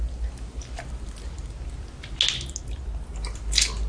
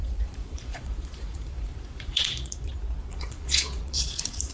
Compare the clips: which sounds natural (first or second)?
first